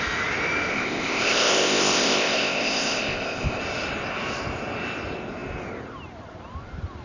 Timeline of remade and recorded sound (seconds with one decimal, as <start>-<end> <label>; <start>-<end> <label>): 0.0-0.7 recorded; 0.7-3.6 remade; 3.6-7.0 recorded